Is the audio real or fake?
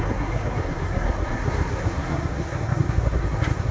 fake